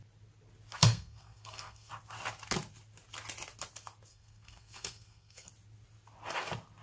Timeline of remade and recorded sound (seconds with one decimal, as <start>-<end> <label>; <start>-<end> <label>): 0.0-0.8 recorded; 0.8-1.9 remade; 1.9-4.1 recorded; 4.1-5.5 remade; 5.5-6.8 recorded